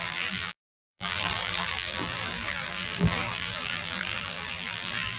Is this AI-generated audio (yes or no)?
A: yes